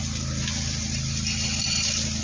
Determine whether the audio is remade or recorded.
recorded